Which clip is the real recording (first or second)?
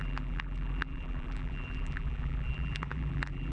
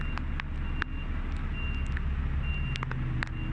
second